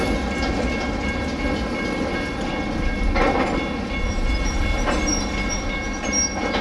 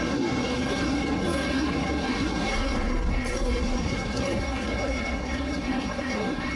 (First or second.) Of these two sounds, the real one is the first